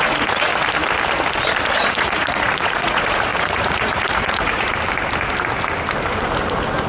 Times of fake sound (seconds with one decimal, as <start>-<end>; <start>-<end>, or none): 0.0-0.5; 1.7-4.7